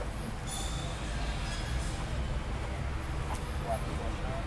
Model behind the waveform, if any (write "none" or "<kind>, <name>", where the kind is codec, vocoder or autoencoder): none